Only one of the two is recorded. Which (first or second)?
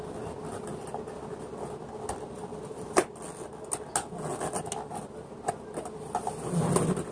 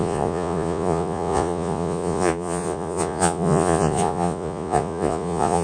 first